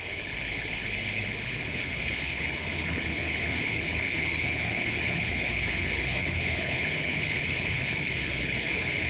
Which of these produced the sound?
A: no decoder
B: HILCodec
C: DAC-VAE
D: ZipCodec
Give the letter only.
B